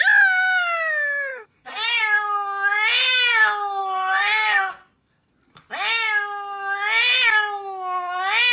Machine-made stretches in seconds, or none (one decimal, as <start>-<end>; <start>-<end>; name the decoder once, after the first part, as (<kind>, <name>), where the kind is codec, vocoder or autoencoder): 1.3-2.0 (codec, SNAC); 3.8-5.3